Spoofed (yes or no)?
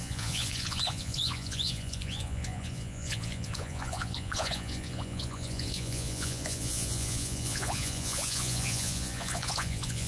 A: yes